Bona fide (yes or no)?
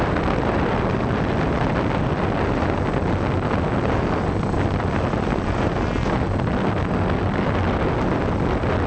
yes